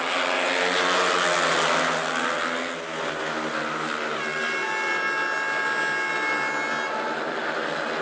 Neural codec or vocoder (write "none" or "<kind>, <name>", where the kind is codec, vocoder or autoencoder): none